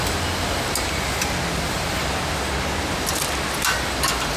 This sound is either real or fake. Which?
real